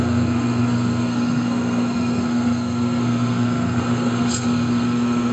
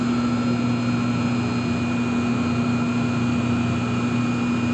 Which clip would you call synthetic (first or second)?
first